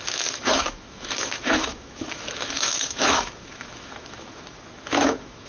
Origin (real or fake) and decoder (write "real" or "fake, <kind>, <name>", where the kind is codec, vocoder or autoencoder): fake, autoencoder, DAC-VAE